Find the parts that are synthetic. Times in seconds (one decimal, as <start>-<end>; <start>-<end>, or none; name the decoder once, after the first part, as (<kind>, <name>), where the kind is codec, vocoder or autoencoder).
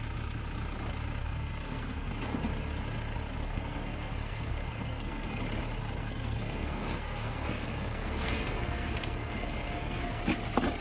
1.2-2.1 (codec, SNAC); 3.4-5.4; 6.0-10.2